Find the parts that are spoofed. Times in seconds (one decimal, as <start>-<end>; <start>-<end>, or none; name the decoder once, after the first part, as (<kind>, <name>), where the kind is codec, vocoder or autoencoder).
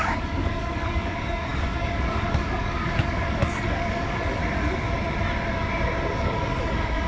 0.0-4.4 (codec, DAC); 6.1-7.1